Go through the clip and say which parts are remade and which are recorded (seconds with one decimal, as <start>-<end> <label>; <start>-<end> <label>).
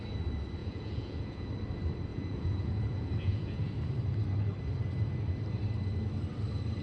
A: 0.0-0.6 recorded; 0.6-1.5 remade; 1.5-2.1 recorded; 2.1-3.7 remade; 3.7-6.8 recorded